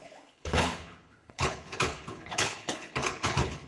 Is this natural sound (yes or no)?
no